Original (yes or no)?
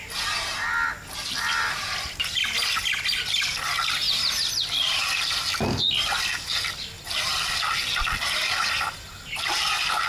yes